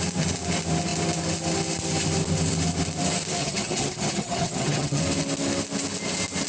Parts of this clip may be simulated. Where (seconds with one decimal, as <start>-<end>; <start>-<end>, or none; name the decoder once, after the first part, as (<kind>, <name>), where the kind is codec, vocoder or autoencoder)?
3.4-5.0 (vocoder, HiFi-GAN)